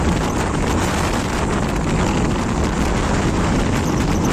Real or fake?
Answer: real